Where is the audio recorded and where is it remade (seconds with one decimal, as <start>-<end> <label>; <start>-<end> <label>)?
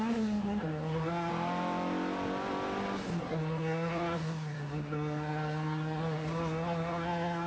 0.0-1.3 remade; 1.3-3.2 recorded; 3.2-7.5 remade